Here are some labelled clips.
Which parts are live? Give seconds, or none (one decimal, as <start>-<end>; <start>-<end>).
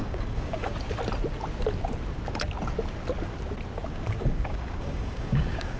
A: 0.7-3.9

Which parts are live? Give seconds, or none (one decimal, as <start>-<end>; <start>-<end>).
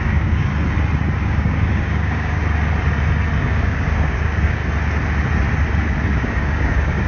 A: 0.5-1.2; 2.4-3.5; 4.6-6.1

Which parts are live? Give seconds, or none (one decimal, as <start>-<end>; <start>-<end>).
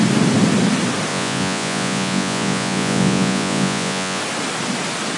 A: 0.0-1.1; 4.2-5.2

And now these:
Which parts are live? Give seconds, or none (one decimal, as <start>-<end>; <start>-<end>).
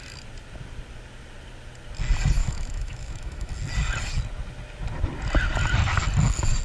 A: 0.0-2.4; 3.5-6.6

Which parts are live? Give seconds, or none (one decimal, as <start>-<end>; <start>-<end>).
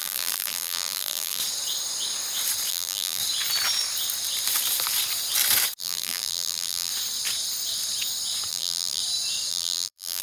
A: 1.4-2.7; 3.2-5.8; 6.9-8.5; 9.0-9.5